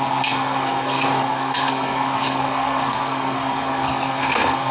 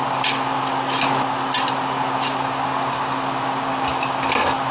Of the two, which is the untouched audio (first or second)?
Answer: second